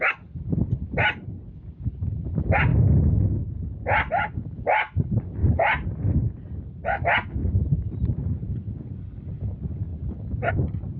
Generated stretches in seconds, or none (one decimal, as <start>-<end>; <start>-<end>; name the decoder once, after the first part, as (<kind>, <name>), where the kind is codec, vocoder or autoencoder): 5.4-6.0 (vocoder, BigVGAN v2); 7.4-8.7